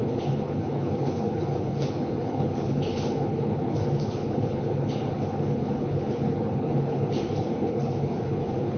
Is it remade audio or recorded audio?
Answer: remade